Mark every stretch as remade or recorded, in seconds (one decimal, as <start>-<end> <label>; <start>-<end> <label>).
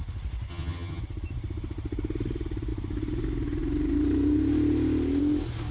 0.0-0.5 recorded; 0.5-1.0 remade; 1.0-5.7 recorded